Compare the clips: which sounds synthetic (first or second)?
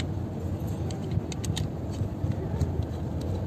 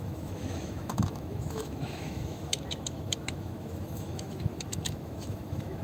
second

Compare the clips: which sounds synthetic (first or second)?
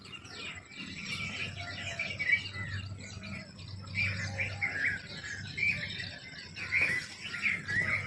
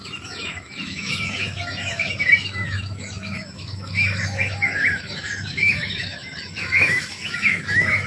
second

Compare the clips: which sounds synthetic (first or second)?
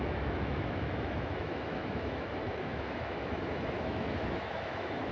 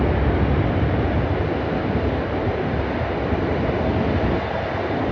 first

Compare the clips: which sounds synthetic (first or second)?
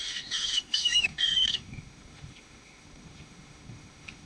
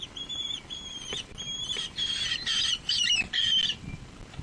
first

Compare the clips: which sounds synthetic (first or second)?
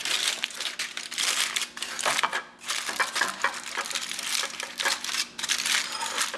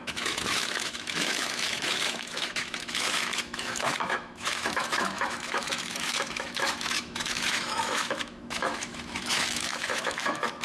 second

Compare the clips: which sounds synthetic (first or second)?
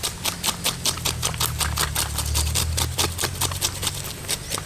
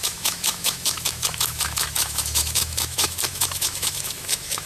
second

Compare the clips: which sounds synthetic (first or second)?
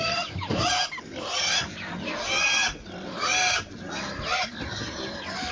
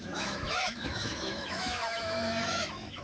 second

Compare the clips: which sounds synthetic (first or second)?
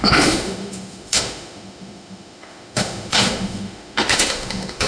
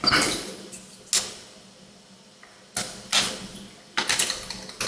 first